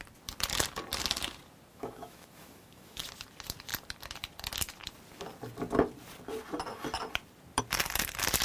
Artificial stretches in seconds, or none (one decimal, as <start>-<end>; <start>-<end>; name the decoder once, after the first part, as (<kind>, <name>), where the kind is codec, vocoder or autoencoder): 1.7-3.0 (autoencoder, DAC-VAE)